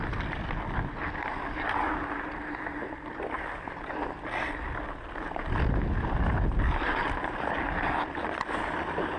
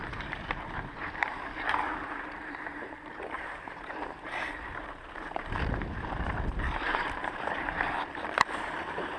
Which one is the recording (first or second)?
first